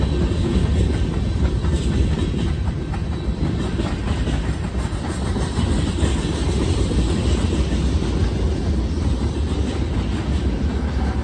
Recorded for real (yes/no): yes